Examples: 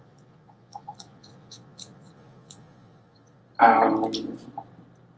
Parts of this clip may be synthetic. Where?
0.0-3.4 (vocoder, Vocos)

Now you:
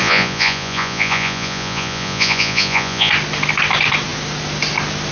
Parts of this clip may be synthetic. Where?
0.0-3.1 (vocoder, Vocos)